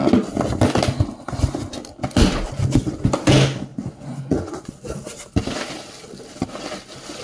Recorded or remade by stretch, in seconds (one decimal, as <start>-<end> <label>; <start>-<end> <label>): 0.0-3.7 recorded; 3.7-4.7 remade; 4.7-7.2 recorded